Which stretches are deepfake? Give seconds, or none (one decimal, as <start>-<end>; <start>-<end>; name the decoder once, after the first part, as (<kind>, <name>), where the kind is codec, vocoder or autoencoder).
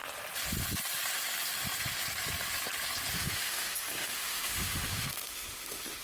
3.1-6.0 (autoencoder, DAC-VAE)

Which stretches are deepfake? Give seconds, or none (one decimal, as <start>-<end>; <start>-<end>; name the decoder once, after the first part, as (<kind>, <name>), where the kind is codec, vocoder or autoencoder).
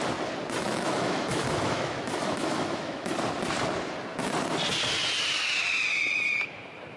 0.6-3.1 (autoencoder, DAC-VAE)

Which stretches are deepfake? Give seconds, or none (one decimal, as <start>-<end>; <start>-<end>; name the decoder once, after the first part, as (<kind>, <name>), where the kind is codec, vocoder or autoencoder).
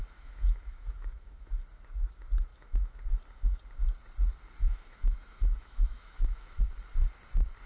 0.0-1.5 (autoencoder, DAC-VAE); 2.5-3.0; 4.6-6.6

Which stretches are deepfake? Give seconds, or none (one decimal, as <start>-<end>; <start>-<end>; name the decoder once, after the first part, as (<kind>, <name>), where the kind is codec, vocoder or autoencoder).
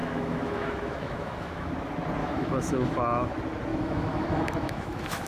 0.0-1.7 (autoencoder, DAC-VAE); 2.2-3.3; 3.7-5.3